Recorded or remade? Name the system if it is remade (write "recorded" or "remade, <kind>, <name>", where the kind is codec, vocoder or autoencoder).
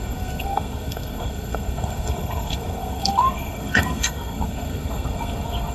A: remade, codec, SNAC